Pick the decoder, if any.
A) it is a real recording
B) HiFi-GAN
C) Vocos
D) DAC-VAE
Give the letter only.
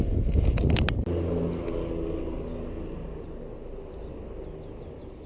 A